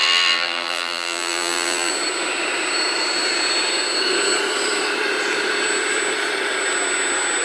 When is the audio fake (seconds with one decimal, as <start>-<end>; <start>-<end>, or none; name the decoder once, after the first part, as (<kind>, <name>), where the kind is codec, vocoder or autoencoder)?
0.0-1.9 (vocoder, BigVGAN v2)